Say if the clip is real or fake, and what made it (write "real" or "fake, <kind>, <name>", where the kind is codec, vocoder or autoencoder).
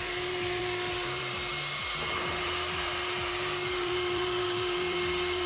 fake, vocoder, BigVGAN v2